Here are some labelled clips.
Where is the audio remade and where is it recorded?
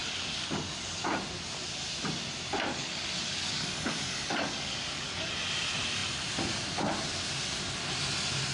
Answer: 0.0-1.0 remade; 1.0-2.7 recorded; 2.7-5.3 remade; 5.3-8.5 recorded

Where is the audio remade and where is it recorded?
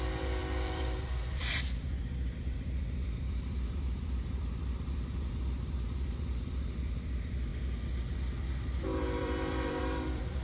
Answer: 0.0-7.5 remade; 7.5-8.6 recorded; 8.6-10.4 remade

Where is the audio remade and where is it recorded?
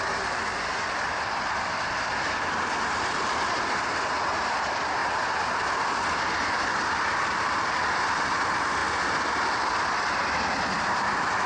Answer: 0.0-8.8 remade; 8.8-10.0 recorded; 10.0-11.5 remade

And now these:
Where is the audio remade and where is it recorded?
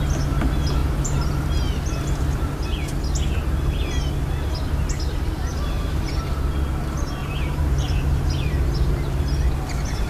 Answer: 0.0-5.5 recorded; 5.5-6.0 remade; 6.0-7.2 recorded; 7.2-9.2 remade; 9.2-10.1 recorded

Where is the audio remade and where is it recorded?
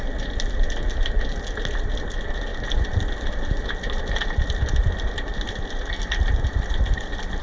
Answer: 0.0-7.4 recorded